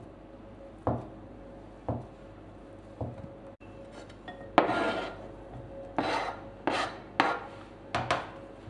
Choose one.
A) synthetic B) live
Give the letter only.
B